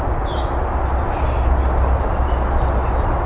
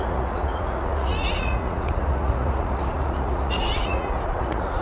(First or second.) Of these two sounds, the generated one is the second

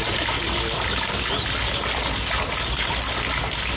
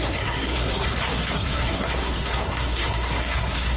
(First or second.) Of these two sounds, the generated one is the second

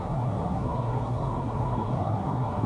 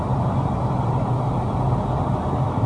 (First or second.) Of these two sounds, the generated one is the first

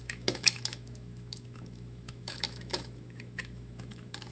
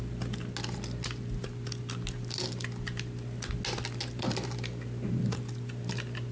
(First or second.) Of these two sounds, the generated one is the first